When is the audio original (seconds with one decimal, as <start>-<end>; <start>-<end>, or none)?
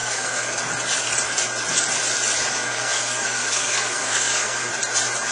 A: 0.6-2.5; 4.7-5.3